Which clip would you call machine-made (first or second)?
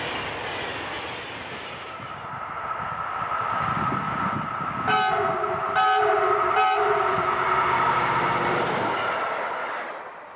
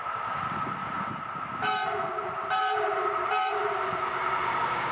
second